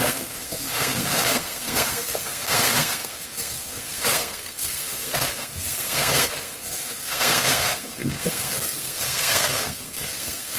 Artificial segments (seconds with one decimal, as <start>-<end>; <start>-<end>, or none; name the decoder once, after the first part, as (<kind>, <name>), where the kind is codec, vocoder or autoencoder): 0.0-10.6 (codec, SNAC)